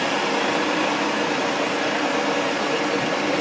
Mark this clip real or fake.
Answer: fake